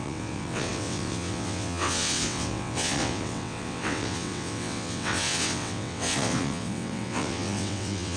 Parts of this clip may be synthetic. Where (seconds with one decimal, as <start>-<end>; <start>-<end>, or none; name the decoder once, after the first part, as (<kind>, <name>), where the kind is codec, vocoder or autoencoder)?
0.0-8.2 (vocoder, WaveNeXt)